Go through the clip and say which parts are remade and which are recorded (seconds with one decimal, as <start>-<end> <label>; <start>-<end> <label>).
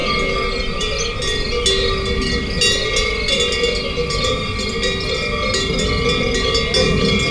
0.0-7.3 recorded